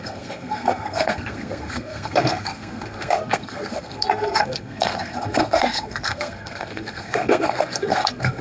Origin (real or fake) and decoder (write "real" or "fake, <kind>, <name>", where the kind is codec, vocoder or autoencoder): fake, codec, SNAC